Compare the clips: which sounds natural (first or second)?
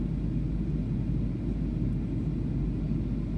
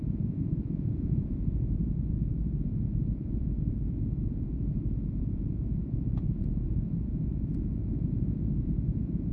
first